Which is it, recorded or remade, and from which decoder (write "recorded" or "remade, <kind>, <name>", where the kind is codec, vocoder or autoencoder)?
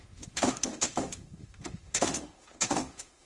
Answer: remade, autoencoder, DAC-VAE